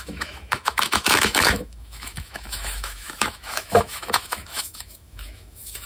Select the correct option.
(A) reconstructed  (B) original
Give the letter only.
A